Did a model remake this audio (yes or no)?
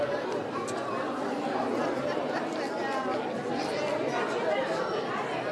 no